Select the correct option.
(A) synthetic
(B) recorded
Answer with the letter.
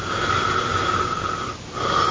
B